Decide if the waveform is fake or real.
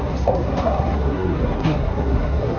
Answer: fake